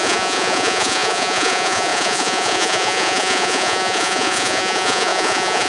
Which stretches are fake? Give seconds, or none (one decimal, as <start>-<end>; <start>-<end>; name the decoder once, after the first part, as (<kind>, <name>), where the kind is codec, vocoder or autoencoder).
0.0-5.7 (vocoder, Vocos)